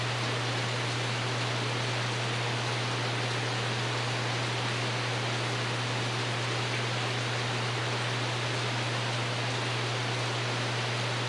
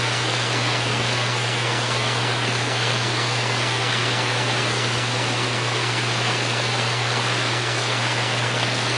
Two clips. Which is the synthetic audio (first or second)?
second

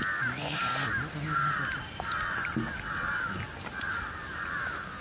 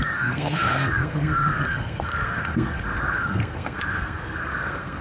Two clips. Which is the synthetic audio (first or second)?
second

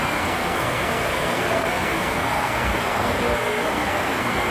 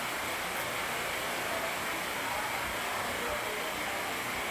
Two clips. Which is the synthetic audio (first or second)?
first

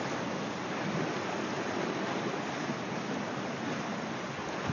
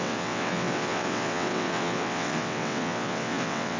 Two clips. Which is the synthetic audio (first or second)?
second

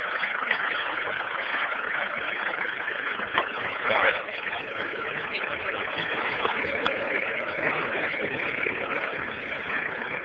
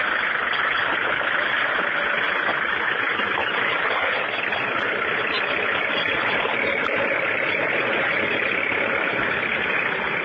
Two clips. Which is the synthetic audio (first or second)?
first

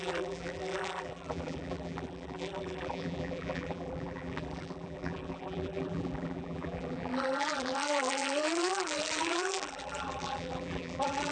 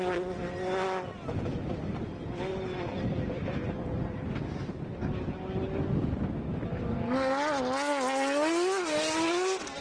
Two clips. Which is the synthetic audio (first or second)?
first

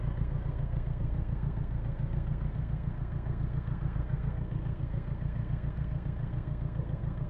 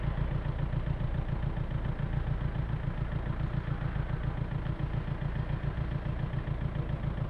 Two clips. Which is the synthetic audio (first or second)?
first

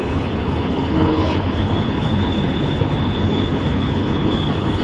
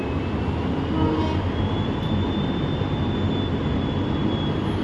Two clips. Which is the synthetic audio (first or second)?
first